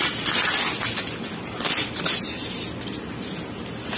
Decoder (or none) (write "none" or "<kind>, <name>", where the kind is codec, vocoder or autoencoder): none